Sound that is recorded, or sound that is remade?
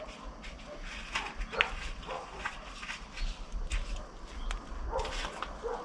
recorded